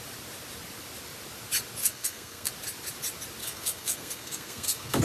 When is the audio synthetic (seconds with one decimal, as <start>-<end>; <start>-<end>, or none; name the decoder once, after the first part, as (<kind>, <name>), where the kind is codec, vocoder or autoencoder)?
1.8-2.5 (codec, SNAC); 3.4-5.0